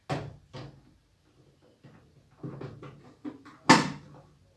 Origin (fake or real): real